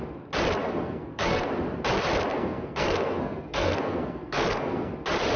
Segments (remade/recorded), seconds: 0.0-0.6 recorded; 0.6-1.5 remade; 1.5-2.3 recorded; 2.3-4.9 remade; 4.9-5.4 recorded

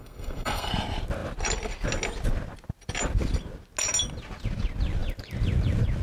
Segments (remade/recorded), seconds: 0.0-0.7 remade; 0.7-6.0 recorded

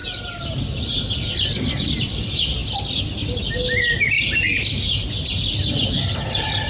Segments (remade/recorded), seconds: 0.0-6.7 recorded

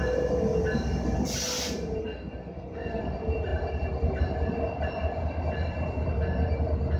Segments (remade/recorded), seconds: 0.0-2.0 recorded; 2.0-3.0 remade; 3.0-7.0 recorded

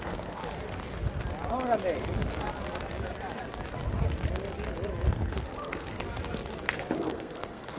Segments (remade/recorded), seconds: 0.0-0.4 remade; 0.4-5.1 recorded; 5.1-6.0 remade; 6.0-7.0 recorded; 7.0-7.8 remade

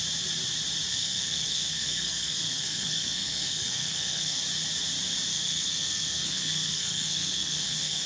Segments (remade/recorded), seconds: 0.0-0.9 recorded; 0.9-4.4 remade; 4.4-5.3 recorded; 5.3-8.1 remade

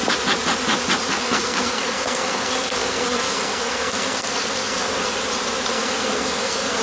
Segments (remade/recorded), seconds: 0.0-1.1 recorded; 1.1-5.2 remade; 5.2-5.7 recorded; 5.7-6.8 remade

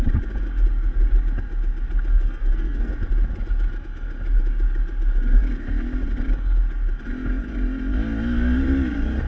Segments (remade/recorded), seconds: 0.0-2.1 recorded; 2.1-2.9 remade; 2.9-9.3 recorded